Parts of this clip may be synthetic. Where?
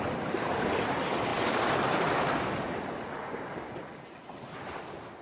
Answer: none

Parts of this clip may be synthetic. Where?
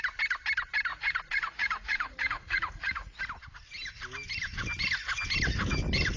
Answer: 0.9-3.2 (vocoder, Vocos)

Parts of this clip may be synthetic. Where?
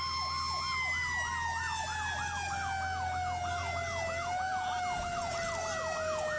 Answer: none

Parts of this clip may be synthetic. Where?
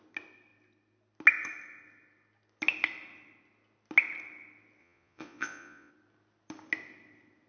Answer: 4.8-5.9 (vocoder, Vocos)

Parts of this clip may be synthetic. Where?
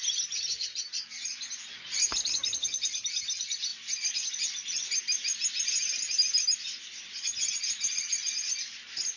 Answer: none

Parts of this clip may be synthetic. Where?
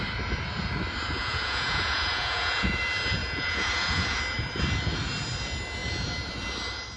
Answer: 1.2-2.8 (vocoder, Vocos); 3.2-4.2